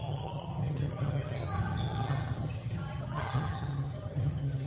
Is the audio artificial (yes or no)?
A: yes